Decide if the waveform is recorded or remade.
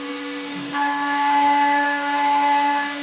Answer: remade